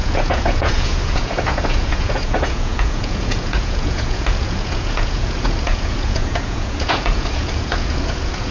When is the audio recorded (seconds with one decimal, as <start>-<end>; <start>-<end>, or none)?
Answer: none